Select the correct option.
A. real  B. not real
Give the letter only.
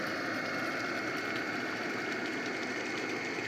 A